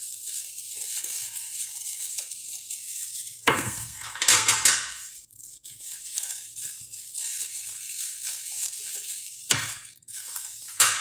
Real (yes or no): no